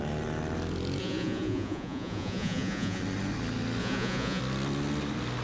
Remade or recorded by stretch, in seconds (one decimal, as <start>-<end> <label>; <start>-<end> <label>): 0.0-1.0 recorded; 1.0-3.0 remade; 3.0-3.8 recorded; 3.8-4.4 remade; 4.4-5.4 recorded